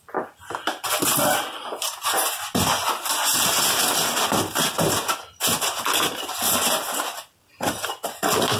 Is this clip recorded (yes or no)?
yes